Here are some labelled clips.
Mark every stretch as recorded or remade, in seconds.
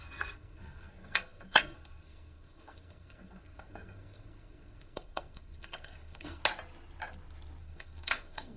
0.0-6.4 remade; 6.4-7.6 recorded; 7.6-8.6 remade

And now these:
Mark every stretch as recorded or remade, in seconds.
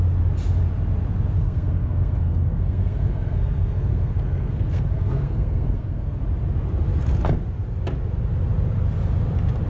0.0-1.4 recorded; 1.4-6.2 remade; 6.2-9.7 recorded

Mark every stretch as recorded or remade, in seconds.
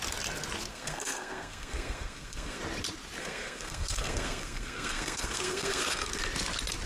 0.0-0.7 recorded; 0.7-2.6 remade; 2.6-3.2 recorded; 3.2-6.1 remade; 6.1-6.9 recorded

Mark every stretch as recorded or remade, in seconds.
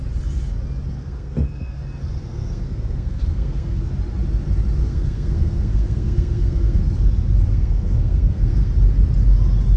0.0-1.0 recorded; 1.0-1.8 remade; 1.8-2.2 recorded; 2.2-3.9 remade; 3.9-4.8 recorded; 4.8-6.8 remade; 6.8-7.5 recorded; 7.5-8.7 remade; 8.7-9.8 recorded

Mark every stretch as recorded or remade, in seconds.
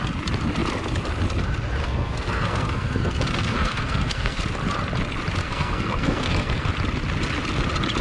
0.0-1.8 recorded; 1.8-4.4 remade; 4.4-5.4 recorded; 5.4-6.7 remade; 6.7-8.0 recorded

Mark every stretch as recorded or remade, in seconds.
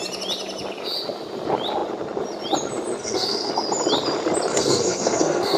0.0-3.0 recorded; 3.0-3.5 remade; 3.5-4.5 recorded; 4.5-5.6 remade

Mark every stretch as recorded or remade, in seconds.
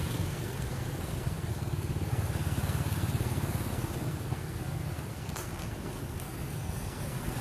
0.0-7.4 remade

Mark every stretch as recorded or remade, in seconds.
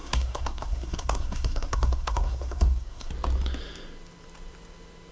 0.0-3.1 remade; 3.1-5.1 recorded